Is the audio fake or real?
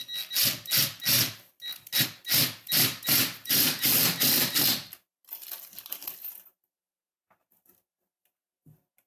real